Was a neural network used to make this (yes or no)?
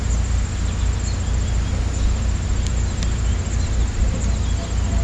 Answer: no